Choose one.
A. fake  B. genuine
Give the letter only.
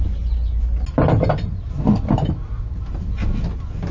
B